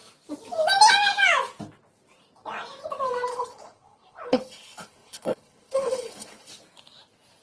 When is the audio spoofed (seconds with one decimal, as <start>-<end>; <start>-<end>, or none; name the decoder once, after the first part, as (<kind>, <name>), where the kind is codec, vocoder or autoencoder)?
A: 3.3-6.5 (codec, HILCodec)